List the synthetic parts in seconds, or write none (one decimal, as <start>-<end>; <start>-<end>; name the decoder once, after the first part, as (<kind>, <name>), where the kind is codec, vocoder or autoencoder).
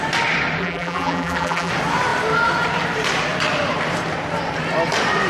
0.6-1.7 (vocoder, BigVGAN v2)